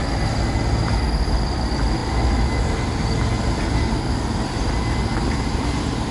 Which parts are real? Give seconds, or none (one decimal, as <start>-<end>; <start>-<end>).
0.0-6.1